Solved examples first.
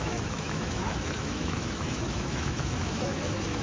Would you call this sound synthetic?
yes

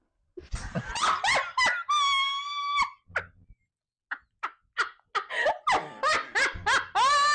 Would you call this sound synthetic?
no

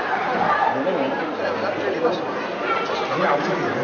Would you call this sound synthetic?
no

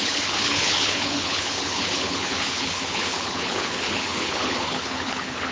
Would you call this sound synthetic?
yes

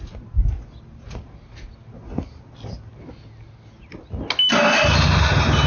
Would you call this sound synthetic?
no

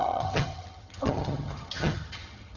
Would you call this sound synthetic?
yes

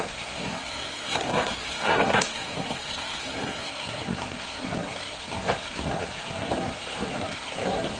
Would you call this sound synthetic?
yes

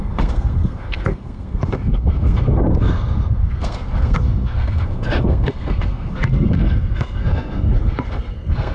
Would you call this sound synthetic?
yes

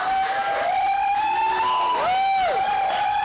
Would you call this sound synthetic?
no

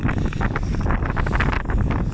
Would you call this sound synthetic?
no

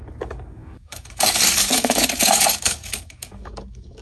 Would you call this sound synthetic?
yes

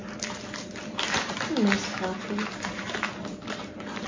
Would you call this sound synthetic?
no